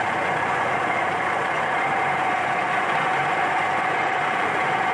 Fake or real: fake